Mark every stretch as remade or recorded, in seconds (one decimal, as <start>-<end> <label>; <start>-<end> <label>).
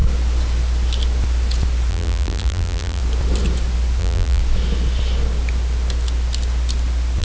0.0-1.9 recorded; 1.9-3.0 remade; 3.0-4.0 recorded; 4.0-4.4 remade; 4.4-7.2 recorded